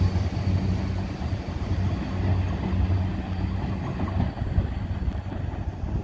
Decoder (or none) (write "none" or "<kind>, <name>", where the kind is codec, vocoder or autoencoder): none